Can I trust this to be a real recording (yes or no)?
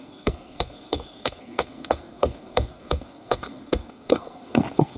no